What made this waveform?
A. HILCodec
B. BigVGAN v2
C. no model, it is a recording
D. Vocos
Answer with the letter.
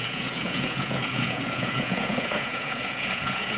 D